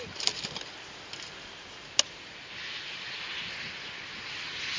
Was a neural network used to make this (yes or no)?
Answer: no